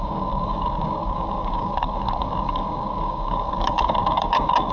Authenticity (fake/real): fake